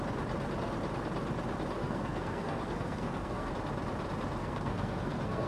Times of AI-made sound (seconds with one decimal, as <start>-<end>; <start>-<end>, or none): 1.8-3.5; 4.4-5.5